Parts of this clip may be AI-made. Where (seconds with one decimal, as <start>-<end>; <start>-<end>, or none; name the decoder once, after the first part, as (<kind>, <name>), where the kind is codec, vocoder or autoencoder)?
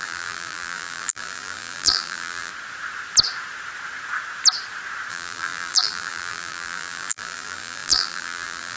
0.0-2.5 (vocoder, BigVGAN v2); 5.1-8.8